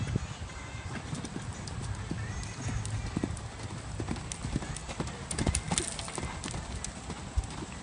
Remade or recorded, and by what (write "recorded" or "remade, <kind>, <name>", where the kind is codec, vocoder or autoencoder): recorded